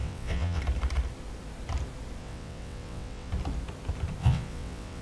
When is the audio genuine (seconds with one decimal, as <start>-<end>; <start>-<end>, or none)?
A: 0.6-2.2; 3.3-4.2